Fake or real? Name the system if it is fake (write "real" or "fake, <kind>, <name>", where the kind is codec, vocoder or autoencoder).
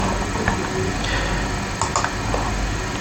real